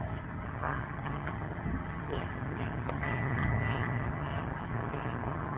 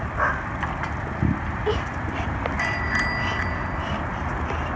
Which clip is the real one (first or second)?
second